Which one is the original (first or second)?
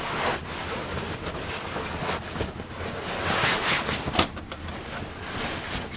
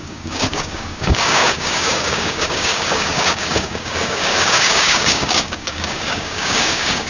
first